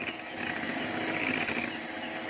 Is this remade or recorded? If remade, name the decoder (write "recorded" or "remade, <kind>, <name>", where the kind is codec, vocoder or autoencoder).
recorded